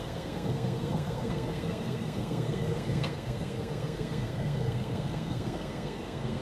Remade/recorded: remade